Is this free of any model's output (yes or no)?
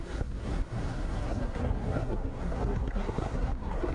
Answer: no